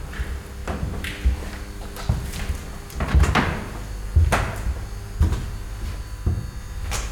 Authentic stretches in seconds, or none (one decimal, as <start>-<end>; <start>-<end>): 0.0-7.1